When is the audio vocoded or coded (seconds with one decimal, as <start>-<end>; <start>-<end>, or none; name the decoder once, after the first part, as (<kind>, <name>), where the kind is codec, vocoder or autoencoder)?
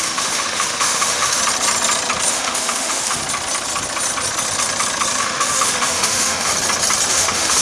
0.0-1.4 (autoencoder, DAC-VAE); 2.3-3.2; 5.2-6.5; 7.1-7.6